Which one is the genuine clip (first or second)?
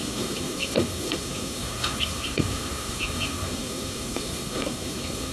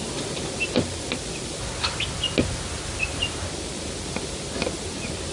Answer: second